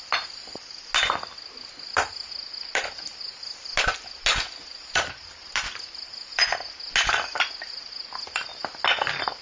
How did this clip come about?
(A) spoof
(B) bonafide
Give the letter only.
B